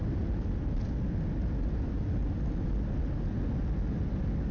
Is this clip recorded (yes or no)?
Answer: yes